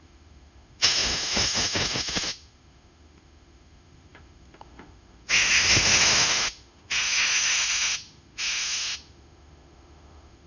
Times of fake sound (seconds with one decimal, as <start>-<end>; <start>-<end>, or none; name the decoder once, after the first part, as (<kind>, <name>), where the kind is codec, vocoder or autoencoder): 0.0-10.5 (autoencoder, DAC-VAE)